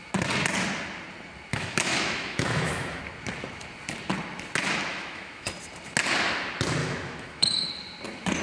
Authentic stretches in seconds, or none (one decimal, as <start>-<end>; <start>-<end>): 0.0-1.5; 3.0-4.9; 5.5-6.8; 7.7-8.4